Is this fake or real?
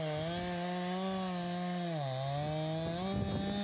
real